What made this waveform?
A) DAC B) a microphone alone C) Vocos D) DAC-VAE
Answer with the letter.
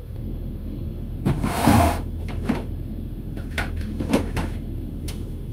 D